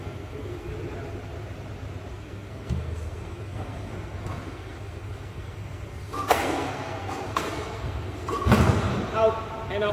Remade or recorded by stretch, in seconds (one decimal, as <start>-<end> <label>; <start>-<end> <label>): 0.0-0.7 remade; 0.7-2.1 recorded; 2.1-8.9 remade; 8.9-9.9 recorded